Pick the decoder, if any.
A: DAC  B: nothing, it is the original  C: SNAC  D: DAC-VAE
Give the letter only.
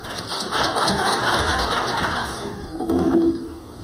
A